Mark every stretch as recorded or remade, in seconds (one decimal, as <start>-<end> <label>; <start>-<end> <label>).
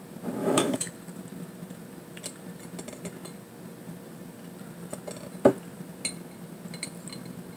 0.0-0.4 recorded; 0.4-0.9 remade; 0.9-7.6 recorded